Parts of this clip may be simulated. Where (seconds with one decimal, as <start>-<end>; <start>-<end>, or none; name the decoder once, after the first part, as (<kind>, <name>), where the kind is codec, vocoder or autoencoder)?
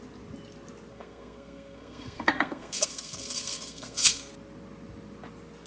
0.9-4.3 (codec, SNAC)